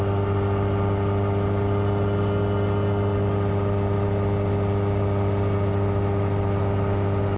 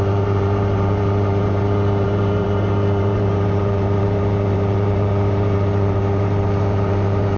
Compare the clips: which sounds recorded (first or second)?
first